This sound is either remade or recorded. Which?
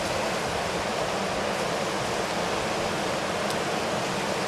recorded